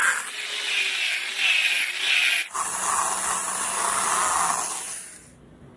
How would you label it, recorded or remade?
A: recorded